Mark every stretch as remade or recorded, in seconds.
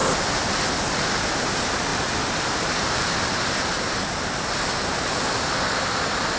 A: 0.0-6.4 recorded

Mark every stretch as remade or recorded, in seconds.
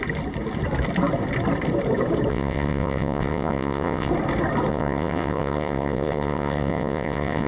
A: 0.0-2.3 recorded; 2.3-4.1 remade; 4.1-4.7 recorded; 4.7-7.5 remade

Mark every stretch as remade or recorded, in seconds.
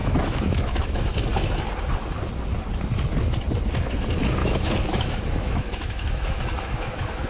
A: 0.0-1.1 remade; 1.1-4.4 recorded; 4.4-7.3 remade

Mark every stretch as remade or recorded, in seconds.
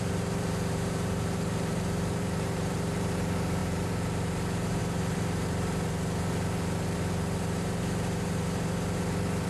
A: 0.0-9.5 remade